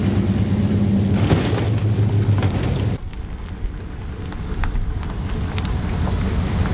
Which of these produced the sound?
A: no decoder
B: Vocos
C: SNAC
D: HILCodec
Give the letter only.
A